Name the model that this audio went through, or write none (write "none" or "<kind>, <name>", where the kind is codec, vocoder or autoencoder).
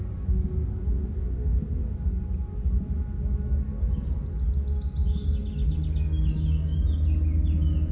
none